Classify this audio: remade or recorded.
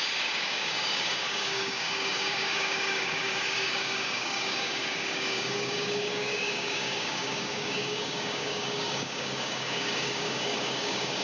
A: remade